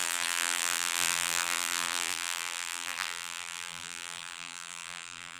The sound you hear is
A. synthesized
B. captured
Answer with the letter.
A